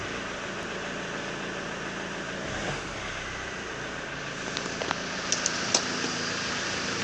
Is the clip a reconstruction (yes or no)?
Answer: no